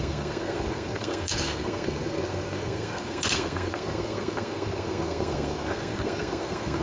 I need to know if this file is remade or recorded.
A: remade